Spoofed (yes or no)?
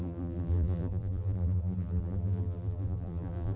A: yes